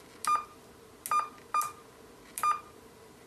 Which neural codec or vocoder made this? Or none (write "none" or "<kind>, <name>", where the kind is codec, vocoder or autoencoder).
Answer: none